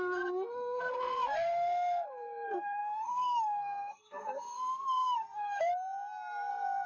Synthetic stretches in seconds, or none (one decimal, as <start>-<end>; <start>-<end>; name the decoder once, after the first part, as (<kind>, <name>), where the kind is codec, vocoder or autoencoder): 0.0-5.7 (codec, SNAC); 6.5-6.9